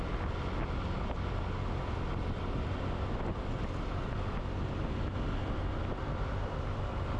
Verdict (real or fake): real